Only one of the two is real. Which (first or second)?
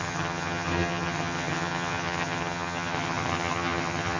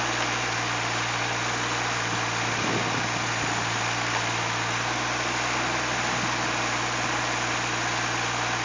second